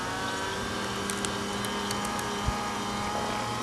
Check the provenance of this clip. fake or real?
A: real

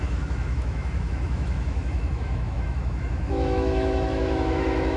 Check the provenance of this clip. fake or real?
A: fake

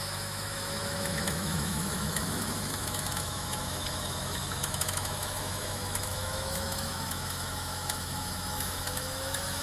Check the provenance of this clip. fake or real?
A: fake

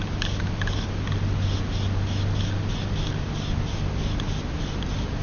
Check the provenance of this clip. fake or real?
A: real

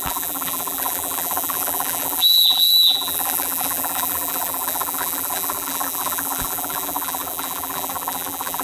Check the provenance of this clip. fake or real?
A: fake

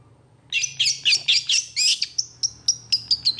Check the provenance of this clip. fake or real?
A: real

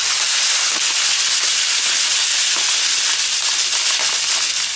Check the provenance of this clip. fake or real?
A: real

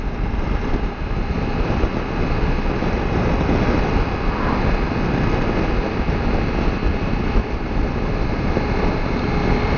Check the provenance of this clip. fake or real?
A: real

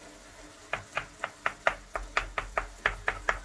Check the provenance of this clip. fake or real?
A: real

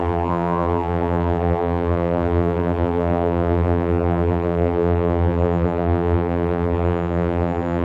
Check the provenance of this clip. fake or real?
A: fake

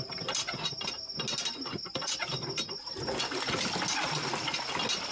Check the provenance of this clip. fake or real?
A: real